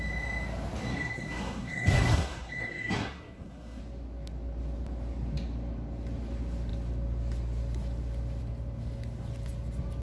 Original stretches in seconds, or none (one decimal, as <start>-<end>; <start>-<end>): 0.0-0.9; 3.8-10.0